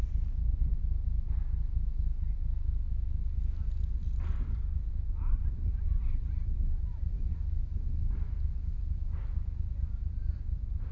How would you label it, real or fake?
real